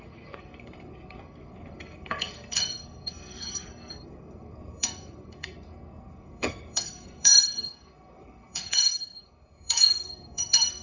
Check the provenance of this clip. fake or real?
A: fake